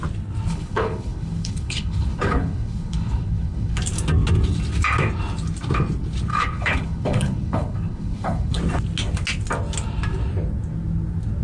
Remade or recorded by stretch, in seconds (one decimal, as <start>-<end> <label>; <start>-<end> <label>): 0.0-0.5 recorded; 0.5-3.8 remade; 3.8-6.3 recorded; 6.3-8.6 remade; 8.6-11.4 recorded